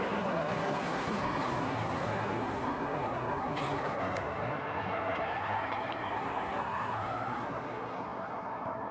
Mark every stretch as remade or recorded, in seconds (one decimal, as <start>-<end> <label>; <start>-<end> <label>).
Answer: 0.0-8.9 remade